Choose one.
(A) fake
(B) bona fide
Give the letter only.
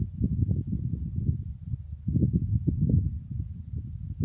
B